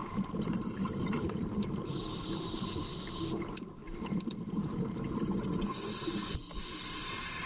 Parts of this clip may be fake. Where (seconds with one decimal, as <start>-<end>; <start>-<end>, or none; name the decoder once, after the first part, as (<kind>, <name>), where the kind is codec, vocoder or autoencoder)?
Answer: 0.0-7.5 (vocoder, BigVGAN v2)